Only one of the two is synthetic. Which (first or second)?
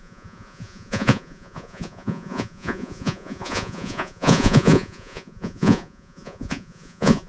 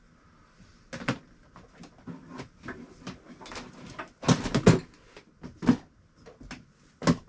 first